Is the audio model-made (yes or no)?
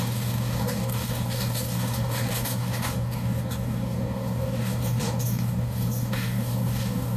yes